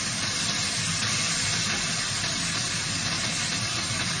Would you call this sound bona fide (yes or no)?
yes